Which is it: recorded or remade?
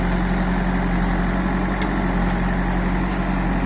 recorded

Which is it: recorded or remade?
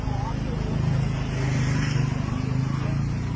recorded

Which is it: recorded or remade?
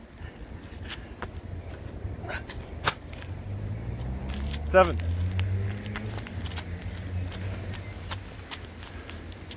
recorded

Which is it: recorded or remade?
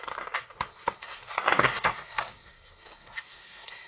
remade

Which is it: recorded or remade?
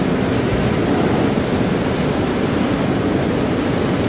recorded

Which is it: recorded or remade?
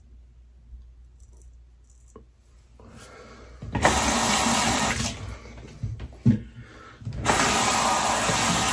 recorded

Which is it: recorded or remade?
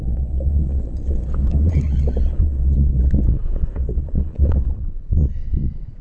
remade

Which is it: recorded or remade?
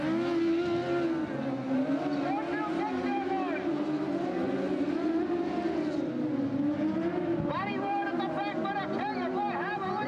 recorded